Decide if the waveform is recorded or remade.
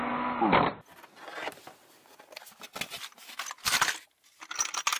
recorded